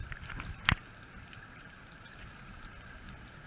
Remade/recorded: recorded